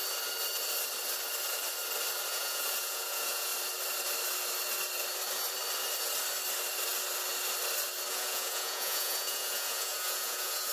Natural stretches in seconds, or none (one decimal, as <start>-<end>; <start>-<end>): 0.0-2.3; 3.5-8.1